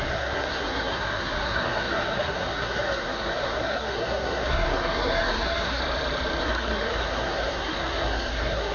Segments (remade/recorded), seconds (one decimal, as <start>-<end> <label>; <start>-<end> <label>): 0.0-5.8 remade; 5.8-6.4 recorded; 6.4-8.7 remade